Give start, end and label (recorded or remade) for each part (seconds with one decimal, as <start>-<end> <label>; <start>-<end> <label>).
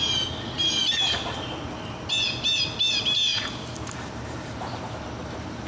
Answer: 0.0-3.3 recorded; 3.3-5.7 remade